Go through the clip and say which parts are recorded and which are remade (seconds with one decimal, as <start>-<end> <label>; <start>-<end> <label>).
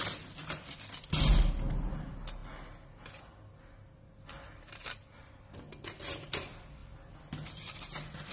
0.0-8.3 recorded